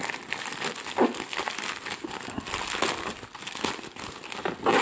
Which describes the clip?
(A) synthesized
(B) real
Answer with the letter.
B